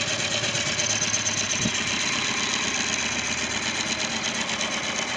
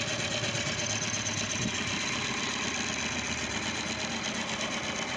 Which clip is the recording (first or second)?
first